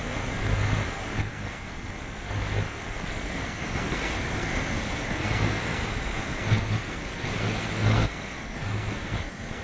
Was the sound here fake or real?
fake